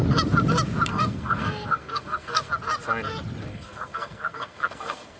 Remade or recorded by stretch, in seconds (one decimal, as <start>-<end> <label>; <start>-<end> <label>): 0.0-0.9 recorded; 0.9-2.5 remade; 2.5-3.5 recorded; 3.5-5.2 remade